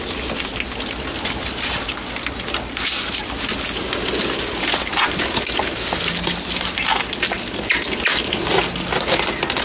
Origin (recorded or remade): recorded